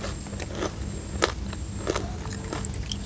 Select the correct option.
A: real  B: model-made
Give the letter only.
A